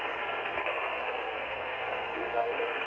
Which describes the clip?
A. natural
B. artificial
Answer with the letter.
B